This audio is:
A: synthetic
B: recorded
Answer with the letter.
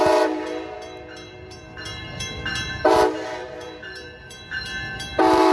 A